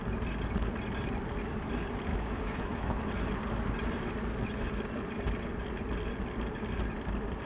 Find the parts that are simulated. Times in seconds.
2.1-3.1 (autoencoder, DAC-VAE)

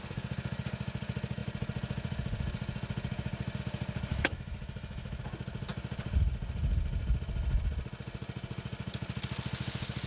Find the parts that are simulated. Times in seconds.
4.1-5.2 (autoencoder, DAC-VAE)

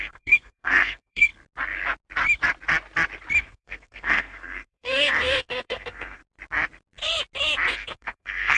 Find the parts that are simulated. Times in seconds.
0.0-1.3 (codec, SNAC); 3.4-6.2; 7.7-8.6

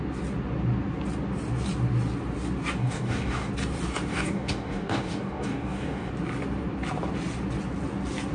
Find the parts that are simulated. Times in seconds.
2.8-3.5 (codec, DAC); 4.1-6.1

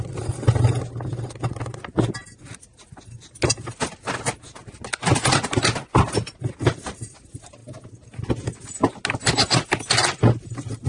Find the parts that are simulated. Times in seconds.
none